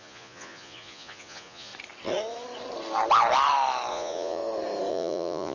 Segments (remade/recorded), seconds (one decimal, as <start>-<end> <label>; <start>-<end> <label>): 0.0-1.7 remade; 1.7-3.9 recorded; 3.9-4.4 remade; 4.4-4.9 recorded; 4.9-5.5 remade